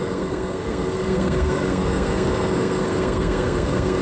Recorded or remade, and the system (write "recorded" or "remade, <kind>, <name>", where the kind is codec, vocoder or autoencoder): remade, codec, SNAC